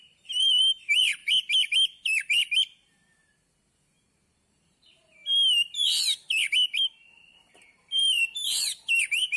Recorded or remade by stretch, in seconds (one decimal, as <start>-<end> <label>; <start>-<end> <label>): 0.0-1.2 remade; 1.2-4.3 recorded; 4.3-5.2 remade; 5.2-7.5 recorded; 7.5-9.4 remade